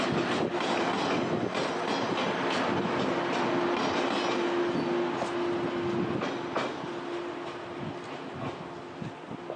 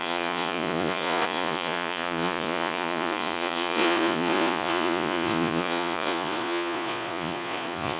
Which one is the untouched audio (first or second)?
first